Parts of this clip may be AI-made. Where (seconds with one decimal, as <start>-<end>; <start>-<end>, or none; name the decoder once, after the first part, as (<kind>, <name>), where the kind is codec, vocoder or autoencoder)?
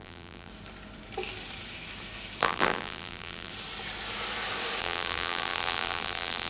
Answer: 0.0-0.5 (vocoder, BigVGAN v2); 2.4-3.5; 4.8-6.5